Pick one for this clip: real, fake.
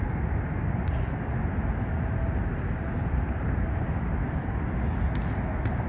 real